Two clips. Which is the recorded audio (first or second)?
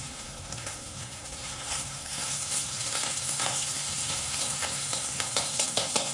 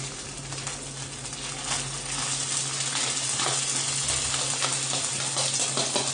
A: second